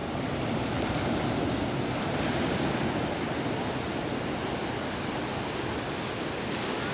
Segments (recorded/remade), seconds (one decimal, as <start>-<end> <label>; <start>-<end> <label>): 0.0-6.9 recorded